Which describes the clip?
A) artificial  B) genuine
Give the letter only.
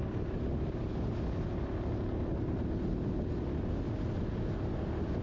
B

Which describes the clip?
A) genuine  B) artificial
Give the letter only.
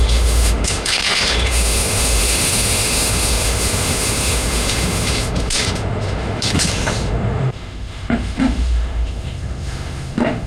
B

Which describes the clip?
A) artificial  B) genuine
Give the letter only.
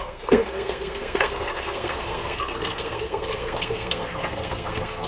A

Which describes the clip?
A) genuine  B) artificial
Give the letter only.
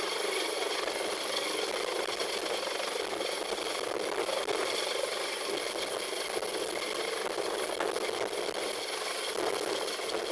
A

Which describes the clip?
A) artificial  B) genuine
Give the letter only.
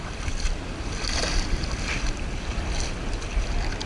B